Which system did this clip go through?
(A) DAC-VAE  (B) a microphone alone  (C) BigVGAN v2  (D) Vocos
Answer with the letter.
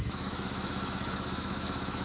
A